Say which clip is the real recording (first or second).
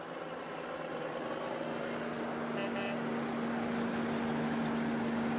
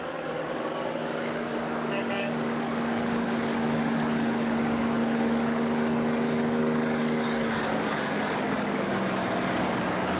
first